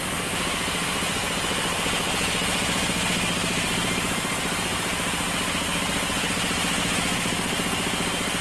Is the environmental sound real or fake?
real